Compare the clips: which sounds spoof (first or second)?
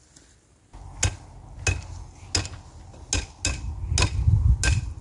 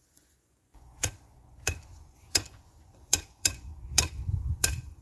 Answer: second